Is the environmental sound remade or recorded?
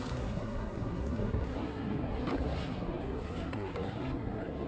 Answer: remade